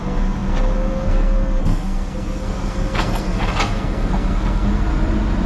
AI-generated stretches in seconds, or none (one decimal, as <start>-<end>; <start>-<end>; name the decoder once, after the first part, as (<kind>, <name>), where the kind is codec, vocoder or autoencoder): 0.0-4.9 (codec, SNAC)